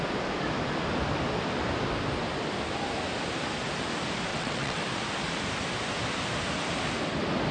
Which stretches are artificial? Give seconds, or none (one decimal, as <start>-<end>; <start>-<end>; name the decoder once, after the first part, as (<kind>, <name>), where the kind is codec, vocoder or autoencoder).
4.3-4.8 (vocoder, WaveNeXt)